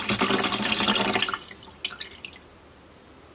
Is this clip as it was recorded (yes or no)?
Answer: yes